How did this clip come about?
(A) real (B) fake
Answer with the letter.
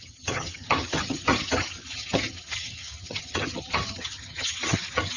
B